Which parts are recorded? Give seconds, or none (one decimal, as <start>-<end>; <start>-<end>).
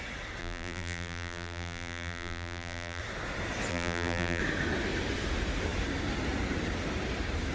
0.0-0.4; 3.0-3.7; 4.4-7.5